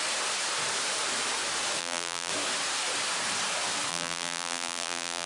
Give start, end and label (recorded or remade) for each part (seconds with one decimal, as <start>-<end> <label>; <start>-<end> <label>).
0.0-1.8 recorded; 1.8-2.3 remade; 2.3-3.9 recorded; 3.9-5.3 remade